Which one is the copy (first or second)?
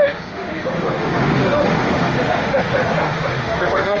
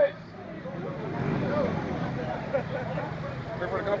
first